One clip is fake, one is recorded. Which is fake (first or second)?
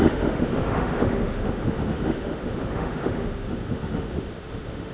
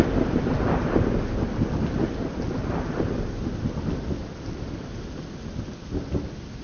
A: first